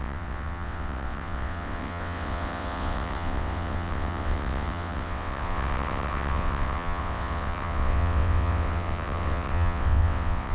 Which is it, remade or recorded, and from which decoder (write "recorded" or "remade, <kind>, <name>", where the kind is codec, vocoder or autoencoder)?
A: remade, vocoder, WaveNeXt